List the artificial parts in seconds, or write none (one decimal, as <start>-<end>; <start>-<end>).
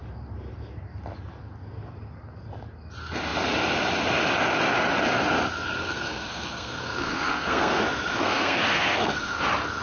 5.8-7.8; 8.2-9.4